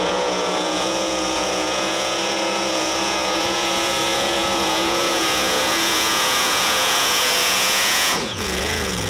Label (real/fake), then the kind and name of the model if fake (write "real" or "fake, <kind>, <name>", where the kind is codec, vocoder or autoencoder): fake, vocoder, Vocos